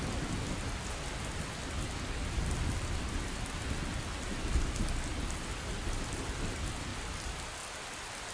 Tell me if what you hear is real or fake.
real